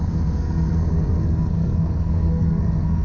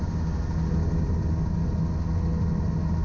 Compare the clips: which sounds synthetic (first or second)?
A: first